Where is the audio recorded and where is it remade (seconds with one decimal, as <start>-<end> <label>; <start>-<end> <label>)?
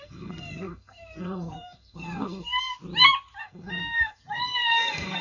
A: 0.0-2.8 remade; 2.8-3.4 recorded; 3.4-5.2 remade